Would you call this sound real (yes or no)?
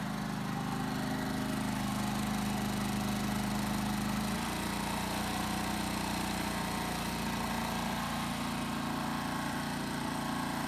yes